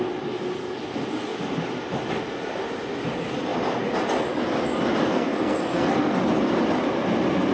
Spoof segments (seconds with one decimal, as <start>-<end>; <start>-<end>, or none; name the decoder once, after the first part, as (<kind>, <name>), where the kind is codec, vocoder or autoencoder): 5.0-6.2 (codec, SNAC)